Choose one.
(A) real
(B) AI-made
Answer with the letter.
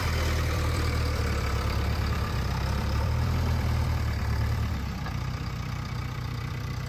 B